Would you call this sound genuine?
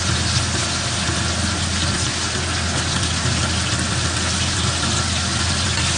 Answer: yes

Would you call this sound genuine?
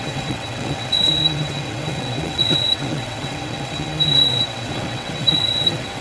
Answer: no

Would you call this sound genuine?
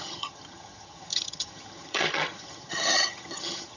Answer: no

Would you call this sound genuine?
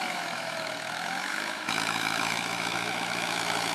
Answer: no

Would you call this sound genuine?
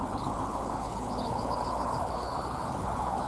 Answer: no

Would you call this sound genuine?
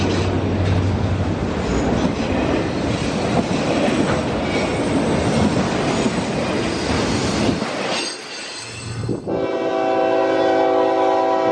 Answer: yes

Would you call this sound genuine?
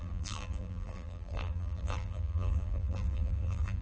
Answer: no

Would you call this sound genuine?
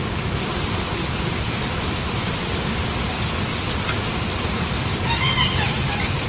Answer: no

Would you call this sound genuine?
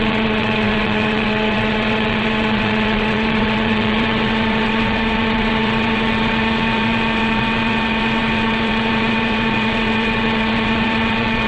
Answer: no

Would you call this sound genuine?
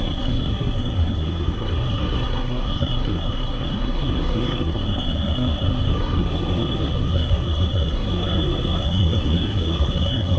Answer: no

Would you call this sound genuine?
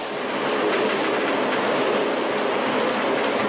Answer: yes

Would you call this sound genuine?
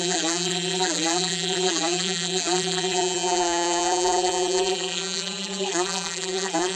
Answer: no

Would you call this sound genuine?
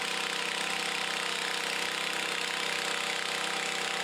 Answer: yes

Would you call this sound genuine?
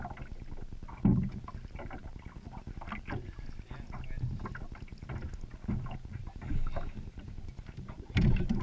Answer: yes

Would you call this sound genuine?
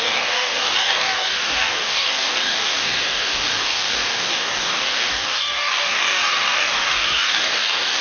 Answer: no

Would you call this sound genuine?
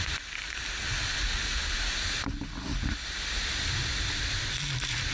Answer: yes